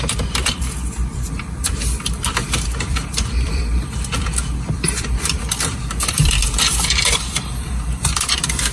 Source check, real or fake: fake